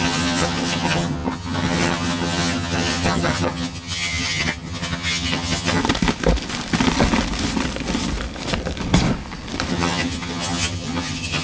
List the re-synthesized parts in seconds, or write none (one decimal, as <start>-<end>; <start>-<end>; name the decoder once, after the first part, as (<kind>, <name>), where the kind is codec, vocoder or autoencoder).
0.0-5.8 (vocoder, HiFi-GAN); 9.7-11.4